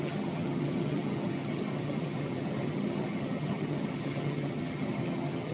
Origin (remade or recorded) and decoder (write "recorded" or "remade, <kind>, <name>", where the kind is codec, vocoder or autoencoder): remade, vocoder, HiFi-GAN